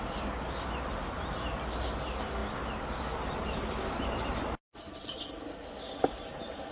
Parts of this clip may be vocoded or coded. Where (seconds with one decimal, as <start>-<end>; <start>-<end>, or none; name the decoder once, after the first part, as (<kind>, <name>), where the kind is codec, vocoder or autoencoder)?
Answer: none